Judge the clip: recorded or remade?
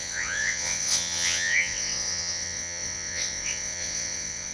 remade